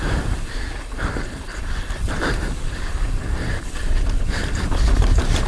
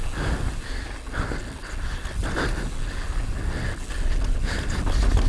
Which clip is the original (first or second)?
second